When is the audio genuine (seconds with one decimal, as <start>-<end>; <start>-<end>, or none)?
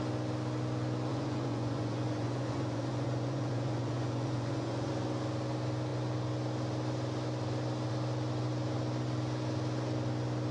0.0-1.1; 4.9-10.5